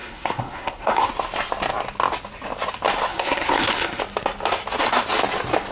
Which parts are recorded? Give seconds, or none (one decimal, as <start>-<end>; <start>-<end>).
1.1-3.1; 4.0-5.7